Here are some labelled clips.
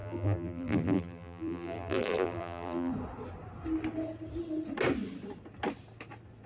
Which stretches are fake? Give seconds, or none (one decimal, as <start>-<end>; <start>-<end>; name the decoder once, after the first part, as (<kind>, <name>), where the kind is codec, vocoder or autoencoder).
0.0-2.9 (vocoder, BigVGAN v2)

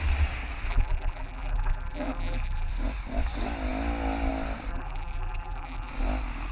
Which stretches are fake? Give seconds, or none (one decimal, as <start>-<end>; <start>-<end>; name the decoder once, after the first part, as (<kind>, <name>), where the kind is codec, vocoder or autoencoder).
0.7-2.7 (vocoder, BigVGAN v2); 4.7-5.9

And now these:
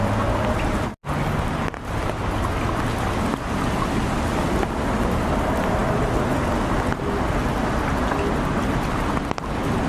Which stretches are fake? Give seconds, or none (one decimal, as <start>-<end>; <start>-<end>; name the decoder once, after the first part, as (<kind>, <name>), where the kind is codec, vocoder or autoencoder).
none

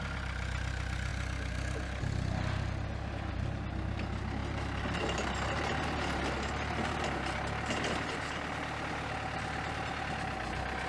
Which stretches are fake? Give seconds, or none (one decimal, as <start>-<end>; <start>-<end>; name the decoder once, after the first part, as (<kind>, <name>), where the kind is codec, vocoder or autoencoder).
4.4-5.0 (vocoder, BigVGAN v2)

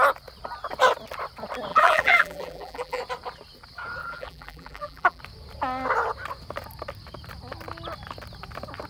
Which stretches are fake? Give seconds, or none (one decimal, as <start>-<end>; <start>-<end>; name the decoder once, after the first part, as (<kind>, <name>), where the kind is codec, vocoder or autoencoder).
1.7-3.0 (vocoder, BigVGAN v2); 4.0-5.2

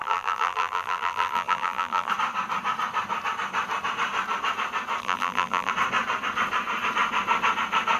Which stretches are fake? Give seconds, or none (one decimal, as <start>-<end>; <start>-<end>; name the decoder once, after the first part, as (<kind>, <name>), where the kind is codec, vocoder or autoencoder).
0.0-2.1 (vocoder, BigVGAN v2); 5.0-5.7

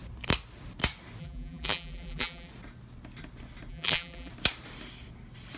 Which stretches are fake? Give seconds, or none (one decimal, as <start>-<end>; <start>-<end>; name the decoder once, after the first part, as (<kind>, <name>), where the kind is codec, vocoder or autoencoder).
1.2-2.5 (vocoder, BigVGAN v2); 3.7-4.3